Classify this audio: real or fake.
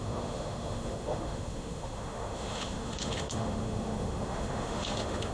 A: fake